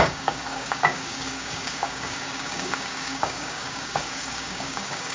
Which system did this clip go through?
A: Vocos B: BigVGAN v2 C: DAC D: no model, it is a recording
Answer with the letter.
C